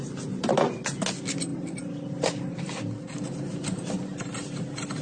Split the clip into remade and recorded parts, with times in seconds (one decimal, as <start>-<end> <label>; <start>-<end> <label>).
0.0-5.0 recorded